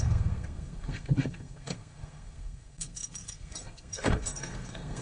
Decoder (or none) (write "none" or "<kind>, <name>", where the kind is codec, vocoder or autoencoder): codec, SNAC